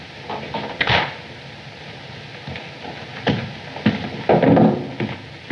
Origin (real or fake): real